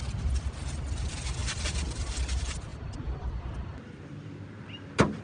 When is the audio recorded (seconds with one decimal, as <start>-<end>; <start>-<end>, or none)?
none